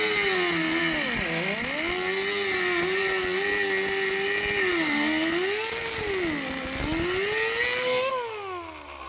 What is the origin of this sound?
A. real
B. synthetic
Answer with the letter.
A